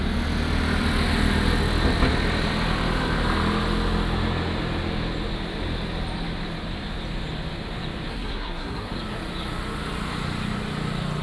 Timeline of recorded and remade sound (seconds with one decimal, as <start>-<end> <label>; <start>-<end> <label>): 0.0-8.1 recorded; 8.1-8.9 remade; 8.9-11.2 recorded